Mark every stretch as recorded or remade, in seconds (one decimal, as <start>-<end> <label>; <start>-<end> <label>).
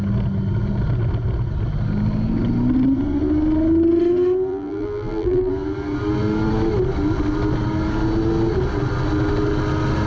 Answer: 0.0-4.5 recorded; 4.5-5.5 remade; 5.5-10.1 recorded